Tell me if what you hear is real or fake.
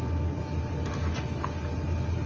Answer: real